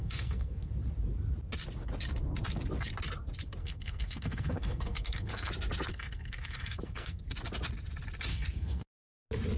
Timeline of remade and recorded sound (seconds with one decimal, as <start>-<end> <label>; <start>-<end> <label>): 0.0-0.7 remade; 0.7-3.6 recorded; 3.6-5.5 remade; 5.5-5.9 recorded; 5.9-7.2 remade; 7.2-8.3 recorded; 8.3-8.9 remade; 8.9-9.6 recorded